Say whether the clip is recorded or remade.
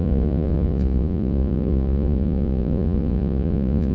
remade